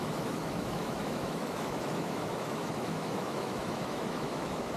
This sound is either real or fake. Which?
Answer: fake